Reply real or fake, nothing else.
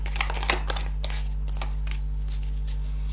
real